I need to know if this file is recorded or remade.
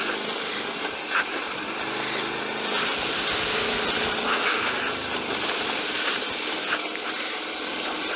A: recorded